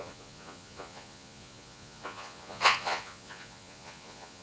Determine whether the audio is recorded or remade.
remade